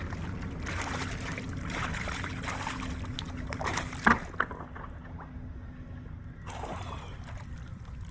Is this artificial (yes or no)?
no